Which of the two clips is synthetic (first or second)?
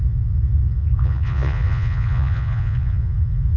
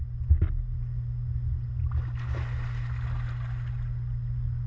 first